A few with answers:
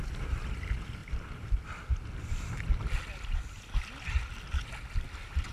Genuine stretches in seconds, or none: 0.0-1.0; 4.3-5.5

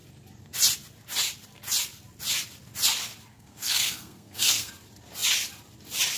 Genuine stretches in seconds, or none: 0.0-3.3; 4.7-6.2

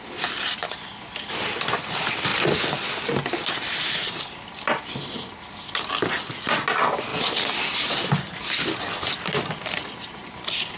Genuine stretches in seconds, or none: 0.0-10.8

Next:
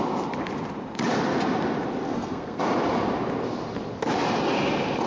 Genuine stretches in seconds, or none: 0.0-2.1; 2.6-5.1